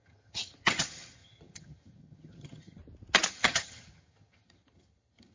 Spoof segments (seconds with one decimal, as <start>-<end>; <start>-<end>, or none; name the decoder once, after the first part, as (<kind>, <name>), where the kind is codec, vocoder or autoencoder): 0.0-2.8 (vocoder, HiFi-GAN); 3.3-5.3